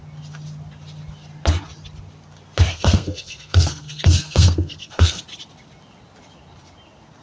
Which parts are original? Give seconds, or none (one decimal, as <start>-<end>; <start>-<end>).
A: 0.0-2.7; 5.2-7.2